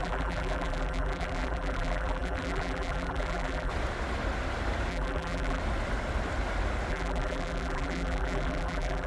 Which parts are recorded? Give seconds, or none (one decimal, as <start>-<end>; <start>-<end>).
3.7-4.9; 5.6-6.9